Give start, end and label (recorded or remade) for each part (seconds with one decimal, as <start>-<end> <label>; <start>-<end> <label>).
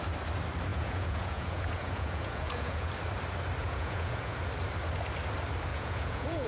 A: 0.0-0.7 recorded; 0.7-2.9 remade; 2.9-3.6 recorded; 3.6-4.4 remade; 4.4-5.7 recorded; 5.7-6.5 remade